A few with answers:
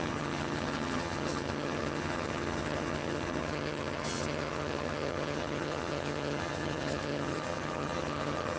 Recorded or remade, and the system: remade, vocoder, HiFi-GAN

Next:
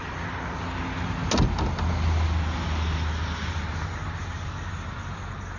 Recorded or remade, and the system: recorded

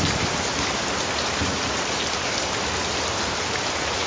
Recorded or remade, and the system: recorded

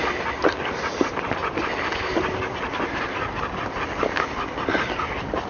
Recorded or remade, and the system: recorded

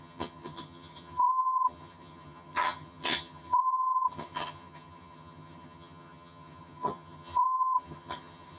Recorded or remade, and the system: remade, vocoder, HiFi-GAN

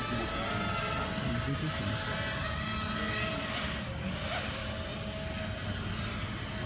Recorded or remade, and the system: recorded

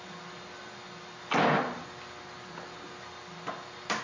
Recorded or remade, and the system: recorded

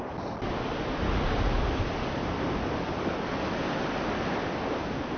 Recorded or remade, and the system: recorded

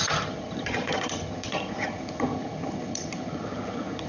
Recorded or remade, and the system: remade, vocoder, HiFi-GAN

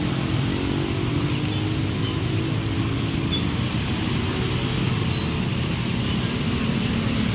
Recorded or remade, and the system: recorded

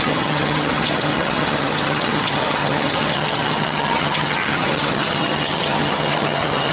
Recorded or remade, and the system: remade, vocoder, HiFi-GAN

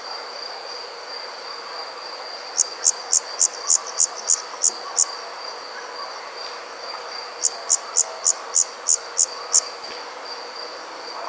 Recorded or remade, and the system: recorded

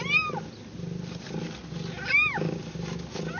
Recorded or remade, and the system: recorded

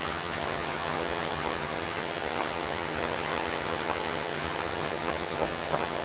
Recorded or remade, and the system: remade, vocoder, HiFi-GAN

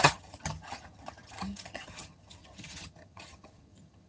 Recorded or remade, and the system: remade, vocoder, HiFi-GAN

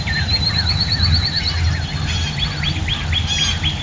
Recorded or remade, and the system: recorded